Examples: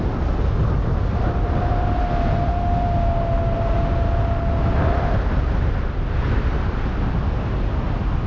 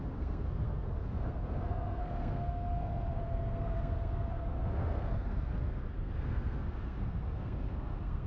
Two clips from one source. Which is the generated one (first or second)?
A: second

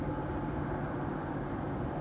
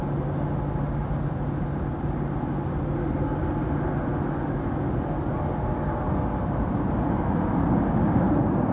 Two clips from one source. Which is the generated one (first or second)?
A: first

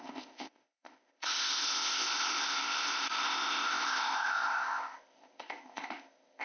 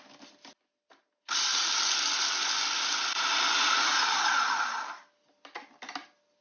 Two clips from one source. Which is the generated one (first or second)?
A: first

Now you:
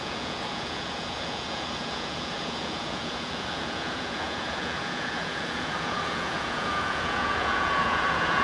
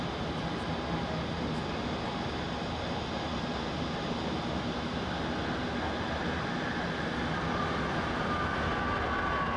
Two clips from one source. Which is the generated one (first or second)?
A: first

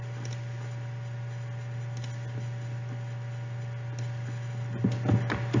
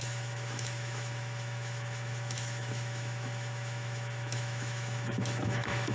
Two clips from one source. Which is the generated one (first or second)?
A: second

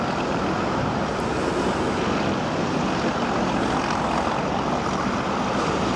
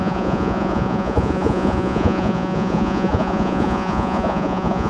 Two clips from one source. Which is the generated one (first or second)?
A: second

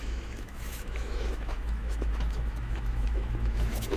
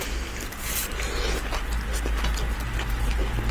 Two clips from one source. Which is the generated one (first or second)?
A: first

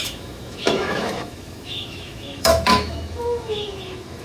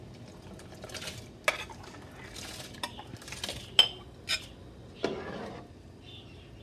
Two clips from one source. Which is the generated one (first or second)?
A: first